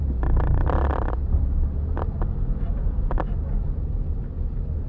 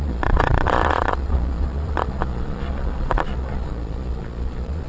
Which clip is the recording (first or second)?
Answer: first